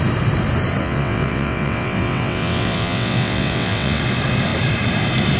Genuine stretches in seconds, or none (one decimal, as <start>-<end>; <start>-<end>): 0.0-0.8; 4.0-5.4